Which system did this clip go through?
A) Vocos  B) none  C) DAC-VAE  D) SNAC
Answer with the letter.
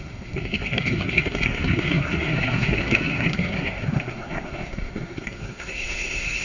D